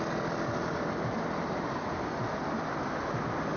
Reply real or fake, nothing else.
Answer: real